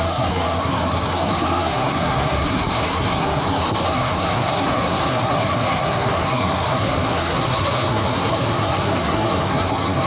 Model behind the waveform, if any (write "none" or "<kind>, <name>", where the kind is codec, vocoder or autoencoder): codec, SNAC